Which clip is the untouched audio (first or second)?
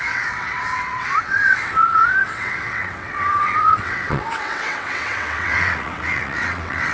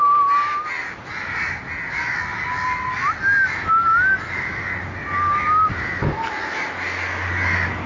second